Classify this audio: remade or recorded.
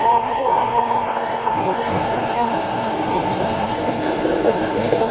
remade